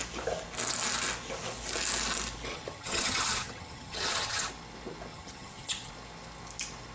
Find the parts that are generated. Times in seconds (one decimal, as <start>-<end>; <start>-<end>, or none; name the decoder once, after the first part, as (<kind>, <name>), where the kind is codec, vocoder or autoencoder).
2.5-4.5 (vocoder, HiFi-GAN); 5.1-5.9